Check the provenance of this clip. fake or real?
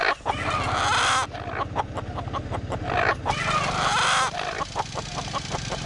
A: real